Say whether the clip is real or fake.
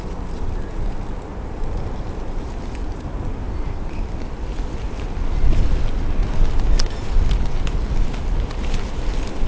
real